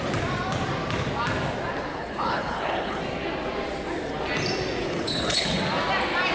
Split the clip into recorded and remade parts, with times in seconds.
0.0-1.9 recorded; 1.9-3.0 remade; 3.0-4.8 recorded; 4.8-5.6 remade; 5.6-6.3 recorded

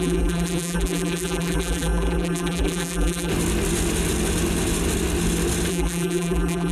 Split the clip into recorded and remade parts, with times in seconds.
0.0-3.3 remade; 3.3-5.7 recorded; 5.7-6.7 remade

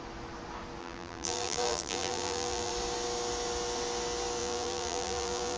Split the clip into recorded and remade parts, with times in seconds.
0.0-0.8 recorded; 0.8-2.7 remade; 2.7-4.4 recorded; 4.4-5.6 remade

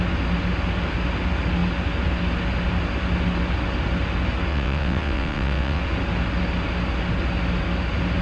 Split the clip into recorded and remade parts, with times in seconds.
0.0-4.5 recorded; 4.5-5.8 remade; 5.8-8.2 recorded

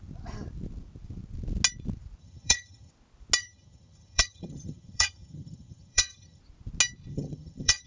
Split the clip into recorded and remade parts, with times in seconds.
0.0-2.2 recorded; 2.2-2.9 remade; 2.9-3.4 recorded; 3.4-6.4 remade; 6.4-7.1 recorded; 7.1-7.9 remade

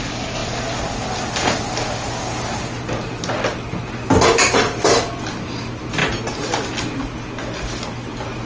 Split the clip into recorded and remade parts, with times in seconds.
0.0-8.4 recorded

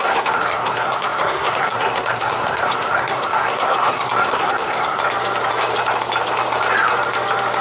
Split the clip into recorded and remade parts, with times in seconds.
0.0-5.0 remade; 5.0-7.6 recorded